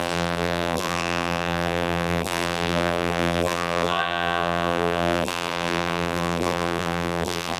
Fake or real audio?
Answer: fake